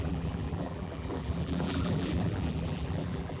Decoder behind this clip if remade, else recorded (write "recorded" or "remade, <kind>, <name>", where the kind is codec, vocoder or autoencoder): remade, vocoder, BigVGAN v2